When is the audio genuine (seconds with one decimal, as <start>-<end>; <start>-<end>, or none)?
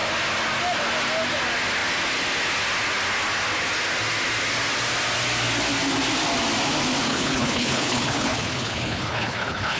0.0-7.1